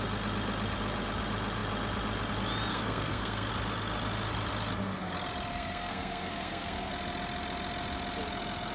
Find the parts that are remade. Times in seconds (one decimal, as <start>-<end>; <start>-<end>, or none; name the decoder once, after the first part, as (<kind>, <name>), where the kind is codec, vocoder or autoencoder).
2.7-3.5 (codec, SNAC); 5.5-6.9